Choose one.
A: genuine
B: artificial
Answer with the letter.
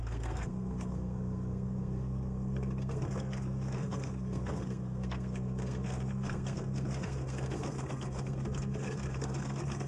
B